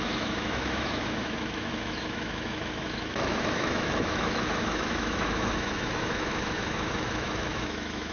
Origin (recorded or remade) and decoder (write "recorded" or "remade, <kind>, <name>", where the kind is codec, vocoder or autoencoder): remade, autoencoder, DAC-VAE